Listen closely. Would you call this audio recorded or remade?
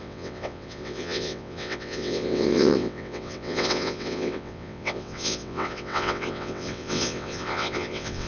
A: remade